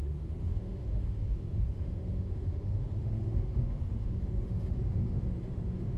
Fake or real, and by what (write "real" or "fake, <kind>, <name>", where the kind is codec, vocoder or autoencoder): fake, autoencoder, DAC-VAE